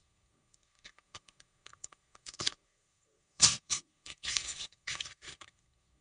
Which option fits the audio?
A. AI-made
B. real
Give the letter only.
A